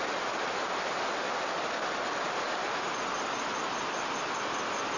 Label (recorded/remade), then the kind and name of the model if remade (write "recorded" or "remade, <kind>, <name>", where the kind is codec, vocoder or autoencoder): recorded